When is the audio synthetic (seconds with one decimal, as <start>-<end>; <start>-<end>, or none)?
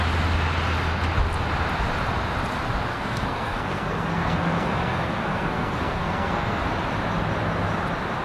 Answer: 2.9-6.6